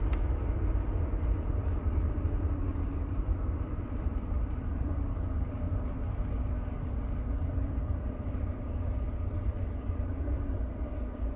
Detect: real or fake fake